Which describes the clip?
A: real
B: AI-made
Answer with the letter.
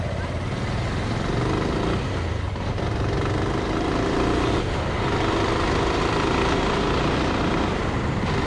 A